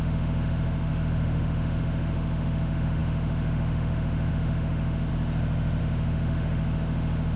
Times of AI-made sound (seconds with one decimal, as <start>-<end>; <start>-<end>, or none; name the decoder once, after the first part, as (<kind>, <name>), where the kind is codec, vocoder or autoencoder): 0.0-5.1 (autoencoder, DAC-VAE); 5.8-7.4